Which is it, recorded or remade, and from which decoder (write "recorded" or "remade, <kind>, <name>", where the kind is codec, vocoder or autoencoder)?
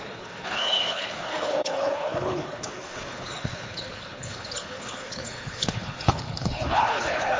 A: remade, codec, HILCodec